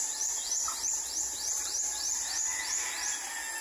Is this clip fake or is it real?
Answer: real